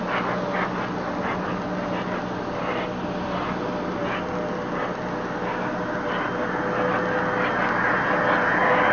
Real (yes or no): yes